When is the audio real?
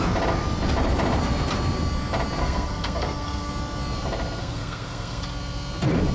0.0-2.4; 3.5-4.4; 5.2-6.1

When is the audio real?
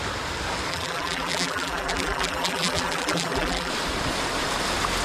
0.0-0.7; 3.7-5.0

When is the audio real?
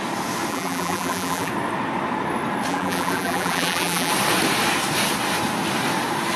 0.0-0.5; 1.5-2.7; 4.1-6.4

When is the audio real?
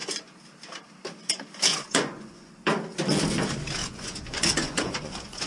0.0-1.7; 2.5-3.8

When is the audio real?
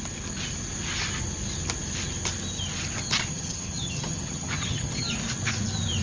0.0-3.3; 5.1-6.0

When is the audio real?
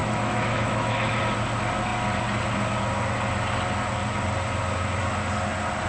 1.2-5.9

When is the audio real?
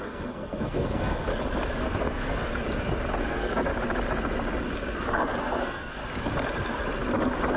1.3-1.8; 2.4-3.2; 3.7-5.4; 6.0-7.6